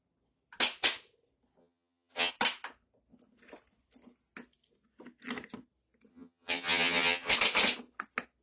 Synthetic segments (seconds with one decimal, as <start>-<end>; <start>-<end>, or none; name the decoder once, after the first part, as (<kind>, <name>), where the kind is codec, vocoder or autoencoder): 1.6-2.3 (vocoder, HiFi-GAN); 6.1-7.3